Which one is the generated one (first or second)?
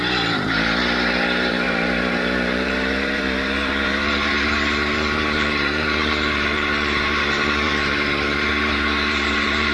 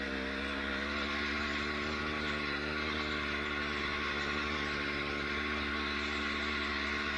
first